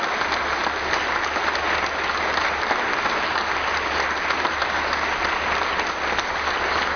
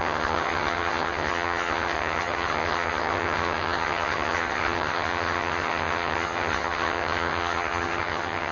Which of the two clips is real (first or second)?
first